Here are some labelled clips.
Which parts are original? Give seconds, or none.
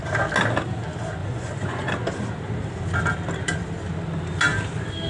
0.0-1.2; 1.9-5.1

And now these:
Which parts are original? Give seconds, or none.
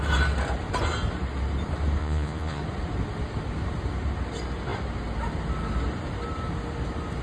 0.0-2.0; 2.6-7.2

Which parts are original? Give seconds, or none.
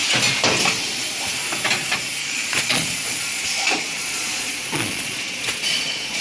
0.0-2.2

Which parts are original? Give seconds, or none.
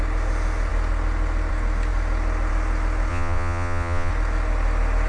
0.0-3.1; 4.1-5.1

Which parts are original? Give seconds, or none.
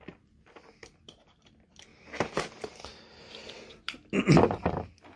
0.0-5.2